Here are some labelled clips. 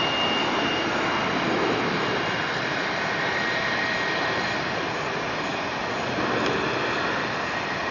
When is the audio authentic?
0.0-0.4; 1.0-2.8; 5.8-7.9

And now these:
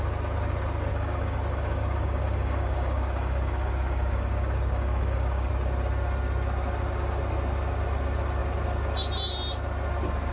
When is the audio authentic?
0.0-0.9; 5.5-10.3